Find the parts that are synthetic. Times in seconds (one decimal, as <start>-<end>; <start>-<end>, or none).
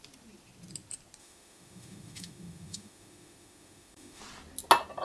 1.2-4.2